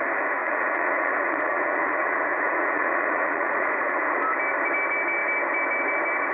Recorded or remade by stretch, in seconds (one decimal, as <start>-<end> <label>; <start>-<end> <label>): 0.0-0.4 recorded; 0.4-4.2 remade; 4.2-6.3 recorded